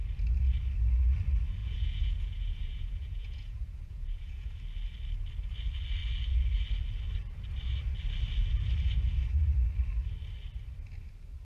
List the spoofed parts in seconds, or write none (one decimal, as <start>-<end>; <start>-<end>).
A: 1.6-4.5

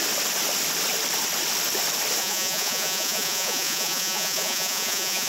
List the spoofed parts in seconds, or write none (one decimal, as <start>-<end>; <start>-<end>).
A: 2.2-5.3

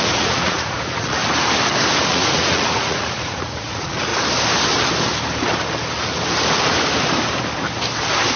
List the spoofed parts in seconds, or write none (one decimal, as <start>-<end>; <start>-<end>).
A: 0.0-1.2; 2.0-4.1

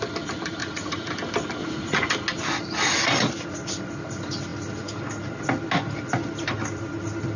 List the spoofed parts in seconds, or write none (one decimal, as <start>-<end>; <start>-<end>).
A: 0.6-1.1; 1.6-2.1

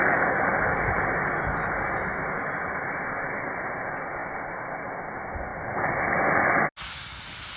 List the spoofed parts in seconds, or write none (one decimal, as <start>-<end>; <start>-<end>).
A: none